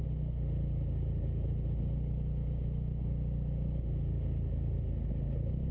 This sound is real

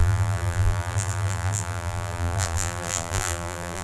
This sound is fake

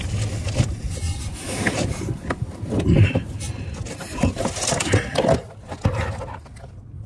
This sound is real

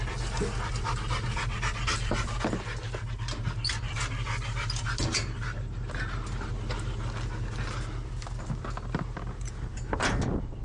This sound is real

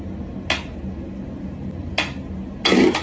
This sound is real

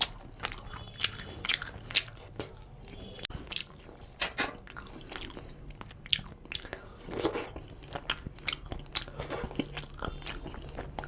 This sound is real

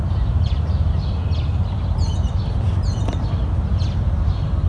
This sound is real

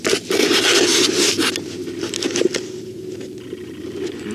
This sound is real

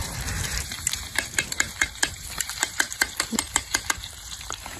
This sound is fake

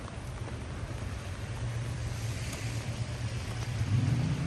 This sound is fake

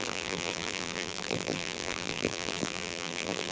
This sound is fake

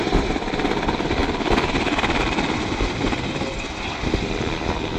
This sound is real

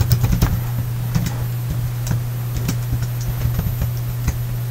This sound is real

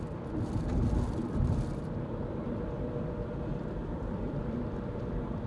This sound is fake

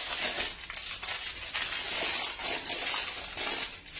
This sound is real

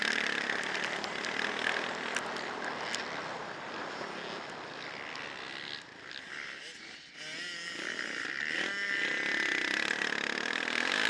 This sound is real